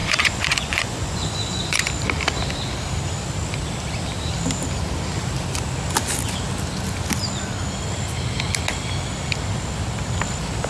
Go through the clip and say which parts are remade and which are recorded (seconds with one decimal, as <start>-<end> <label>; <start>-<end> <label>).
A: 0.0-1.9 remade; 1.9-10.7 recorded